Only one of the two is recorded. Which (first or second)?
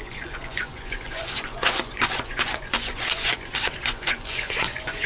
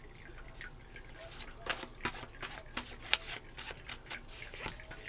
second